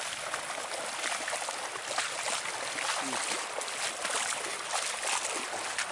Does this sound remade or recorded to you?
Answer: recorded